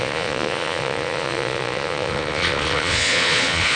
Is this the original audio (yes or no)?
no